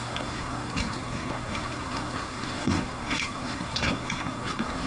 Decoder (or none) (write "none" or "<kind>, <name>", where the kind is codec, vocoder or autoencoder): codec, SNAC